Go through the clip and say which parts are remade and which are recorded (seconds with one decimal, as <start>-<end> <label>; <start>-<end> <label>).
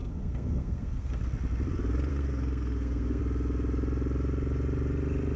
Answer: 0.0-1.2 remade; 1.2-2.1 recorded; 2.1-3.2 remade; 3.2-5.4 recorded